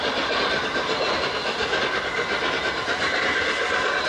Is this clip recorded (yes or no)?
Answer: yes